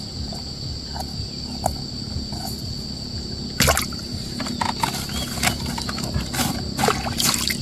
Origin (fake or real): real